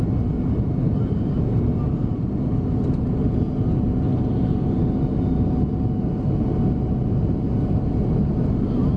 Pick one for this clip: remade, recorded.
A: recorded